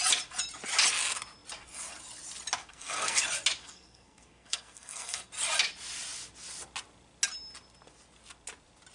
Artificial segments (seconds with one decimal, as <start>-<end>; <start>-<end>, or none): 2.6-3.2; 3.6-5.3